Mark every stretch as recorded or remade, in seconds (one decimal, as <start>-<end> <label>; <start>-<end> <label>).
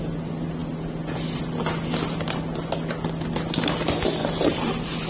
0.0-5.1 recorded